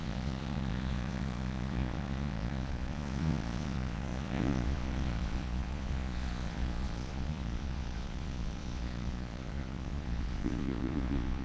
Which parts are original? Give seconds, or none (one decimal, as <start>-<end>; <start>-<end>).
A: none